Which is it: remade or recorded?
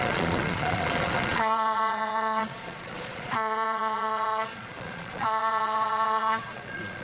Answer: remade